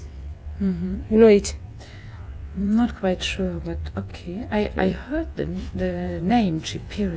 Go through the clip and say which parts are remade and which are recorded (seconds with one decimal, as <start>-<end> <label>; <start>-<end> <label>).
0.0-7.2 remade